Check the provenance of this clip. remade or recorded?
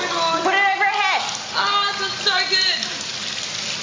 recorded